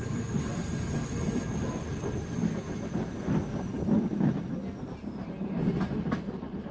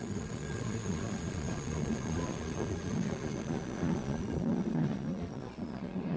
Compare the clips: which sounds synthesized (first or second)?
second